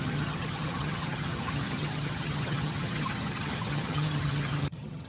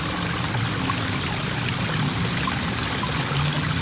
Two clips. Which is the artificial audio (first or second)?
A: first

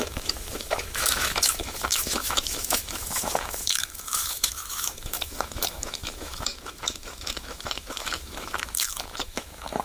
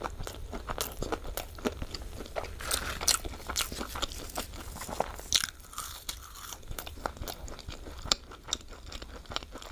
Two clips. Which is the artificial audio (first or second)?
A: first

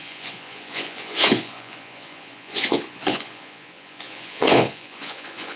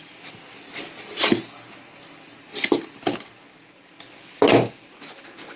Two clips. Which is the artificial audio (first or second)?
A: first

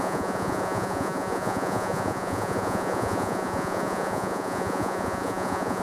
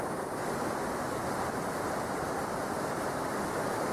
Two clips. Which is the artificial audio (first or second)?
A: first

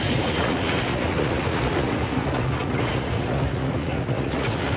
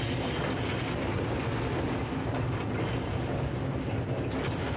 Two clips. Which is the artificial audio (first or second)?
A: first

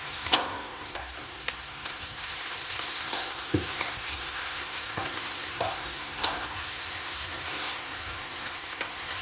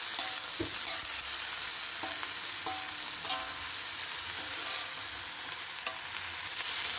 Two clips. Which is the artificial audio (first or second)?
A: first